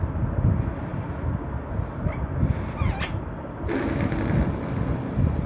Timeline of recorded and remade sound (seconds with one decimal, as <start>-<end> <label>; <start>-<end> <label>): 0.0-5.5 recorded